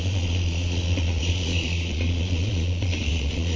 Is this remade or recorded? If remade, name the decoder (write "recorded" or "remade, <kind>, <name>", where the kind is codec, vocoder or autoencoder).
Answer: remade, vocoder, Vocos